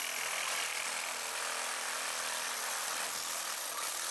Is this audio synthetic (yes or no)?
no